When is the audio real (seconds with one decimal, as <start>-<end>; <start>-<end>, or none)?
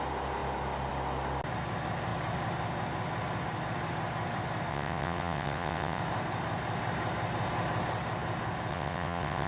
0.0-4.7; 6.0-8.7